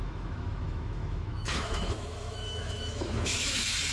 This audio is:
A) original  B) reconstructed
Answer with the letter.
B